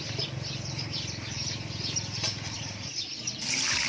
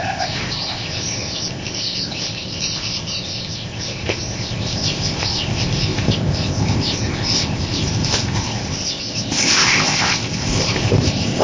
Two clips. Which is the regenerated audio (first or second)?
second